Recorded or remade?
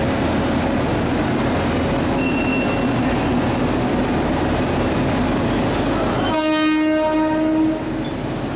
recorded